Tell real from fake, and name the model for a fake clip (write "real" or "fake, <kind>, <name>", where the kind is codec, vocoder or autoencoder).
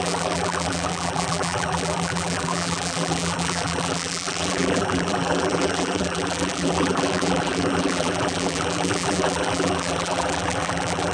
fake, vocoder, BigVGAN v2